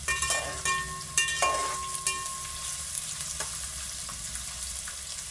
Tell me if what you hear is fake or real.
real